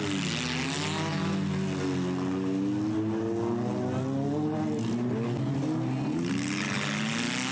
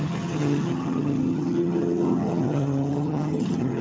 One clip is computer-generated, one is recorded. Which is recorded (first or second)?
first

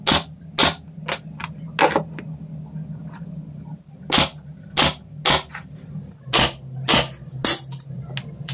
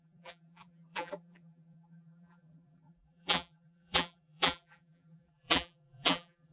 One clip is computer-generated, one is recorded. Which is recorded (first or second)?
first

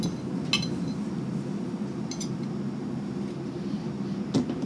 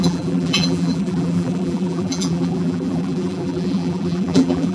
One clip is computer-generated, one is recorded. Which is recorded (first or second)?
first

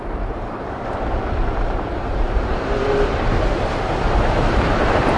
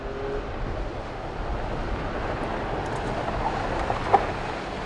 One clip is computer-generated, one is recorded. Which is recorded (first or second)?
second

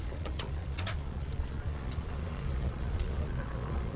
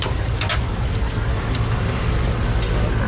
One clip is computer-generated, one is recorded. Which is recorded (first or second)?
second